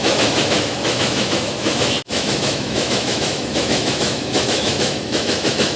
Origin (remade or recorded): remade